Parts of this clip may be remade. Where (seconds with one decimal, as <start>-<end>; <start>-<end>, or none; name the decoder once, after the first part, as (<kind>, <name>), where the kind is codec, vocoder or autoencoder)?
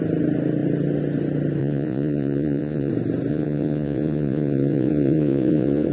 1.6-2.9 (vocoder, Vocos); 3.3-5.9